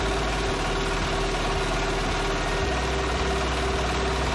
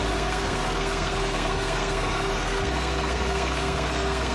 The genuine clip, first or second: first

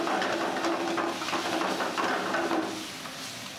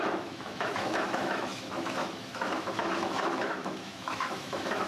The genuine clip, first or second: first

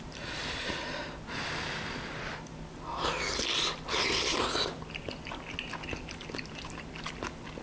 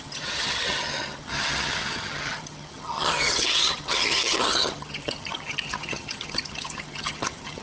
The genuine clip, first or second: first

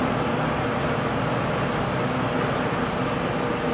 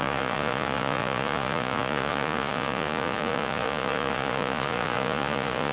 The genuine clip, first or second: first